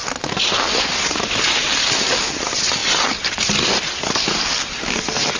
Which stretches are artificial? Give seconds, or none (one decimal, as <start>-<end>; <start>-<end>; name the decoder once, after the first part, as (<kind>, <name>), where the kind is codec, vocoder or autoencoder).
none